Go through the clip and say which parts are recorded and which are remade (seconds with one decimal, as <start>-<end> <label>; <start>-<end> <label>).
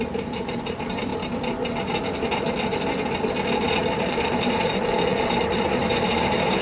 0.0-1.1 remade; 1.1-4.1 recorded; 4.1-6.6 remade